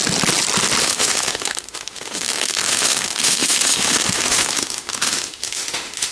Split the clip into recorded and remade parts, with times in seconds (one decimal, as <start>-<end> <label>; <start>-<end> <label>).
0.0-0.8 recorded; 0.8-6.1 remade